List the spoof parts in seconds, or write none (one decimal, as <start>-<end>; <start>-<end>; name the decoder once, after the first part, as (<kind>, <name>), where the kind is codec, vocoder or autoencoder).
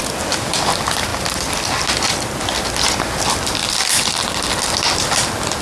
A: none